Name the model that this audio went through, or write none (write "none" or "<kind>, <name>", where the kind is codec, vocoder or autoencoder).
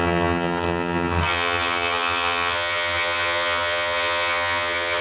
vocoder, HiFi-GAN